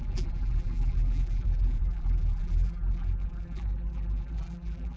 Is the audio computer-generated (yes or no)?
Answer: yes